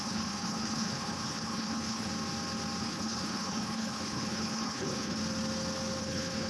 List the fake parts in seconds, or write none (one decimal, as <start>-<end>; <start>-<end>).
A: 0.0-2.1; 2.8-5.2; 6.0-6.5